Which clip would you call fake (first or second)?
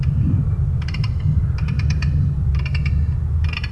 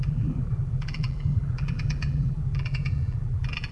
second